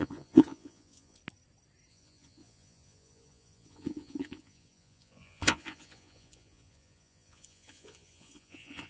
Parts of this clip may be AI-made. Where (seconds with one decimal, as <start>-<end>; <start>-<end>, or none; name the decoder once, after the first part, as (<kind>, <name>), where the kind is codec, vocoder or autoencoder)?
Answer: 0.0-1.2 (vocoder, Vocos); 1.9-8.9